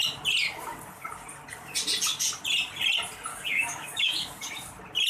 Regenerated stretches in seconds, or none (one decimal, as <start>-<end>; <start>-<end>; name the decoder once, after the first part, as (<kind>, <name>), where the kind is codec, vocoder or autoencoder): 3.3-4.4 (codec, DAC)